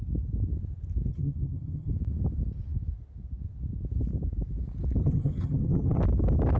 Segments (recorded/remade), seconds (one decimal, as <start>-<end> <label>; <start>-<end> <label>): 0.0-1.1 recorded; 1.1-1.9 remade; 1.9-5.0 recorded; 5.0-6.0 remade; 6.0-6.6 recorded